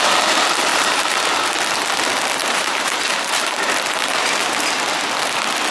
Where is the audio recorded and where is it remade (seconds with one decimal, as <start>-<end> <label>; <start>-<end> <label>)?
0.0-0.7 recorded; 0.7-1.2 remade; 1.2-2.4 recorded; 2.4-4.4 remade; 4.4-5.7 recorded